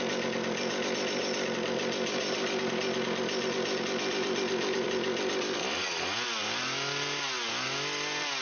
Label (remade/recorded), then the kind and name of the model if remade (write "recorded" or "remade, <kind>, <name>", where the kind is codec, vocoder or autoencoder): recorded